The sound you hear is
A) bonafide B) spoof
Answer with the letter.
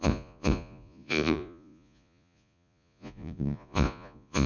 B